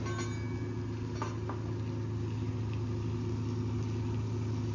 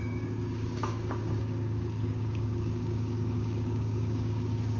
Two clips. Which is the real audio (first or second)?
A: first